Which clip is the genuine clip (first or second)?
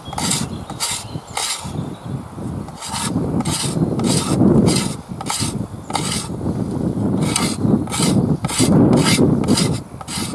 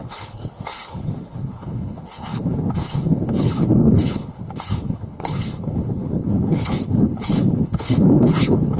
first